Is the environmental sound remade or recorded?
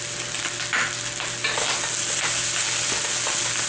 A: recorded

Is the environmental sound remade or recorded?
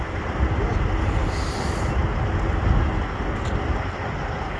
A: recorded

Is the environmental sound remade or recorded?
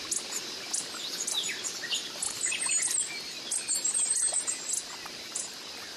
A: recorded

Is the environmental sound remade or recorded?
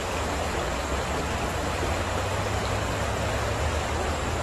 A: recorded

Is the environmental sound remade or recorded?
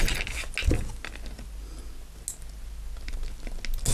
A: recorded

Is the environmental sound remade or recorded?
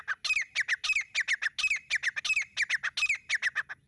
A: recorded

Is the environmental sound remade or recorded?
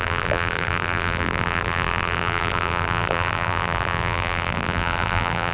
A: remade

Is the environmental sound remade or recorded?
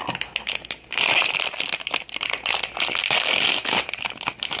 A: recorded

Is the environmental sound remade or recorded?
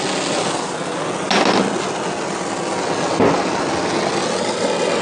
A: recorded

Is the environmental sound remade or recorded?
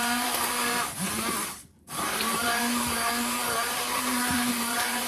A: remade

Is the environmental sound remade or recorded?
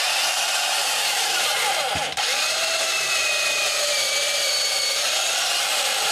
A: remade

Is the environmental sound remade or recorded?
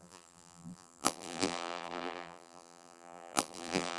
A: remade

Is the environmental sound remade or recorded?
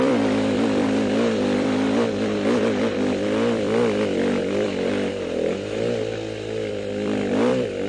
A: remade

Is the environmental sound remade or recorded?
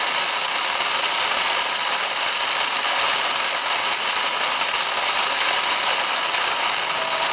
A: recorded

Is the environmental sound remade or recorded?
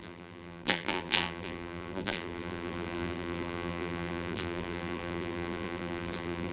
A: remade